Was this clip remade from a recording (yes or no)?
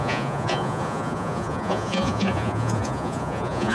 yes